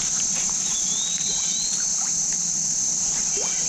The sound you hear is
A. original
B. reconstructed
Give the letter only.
A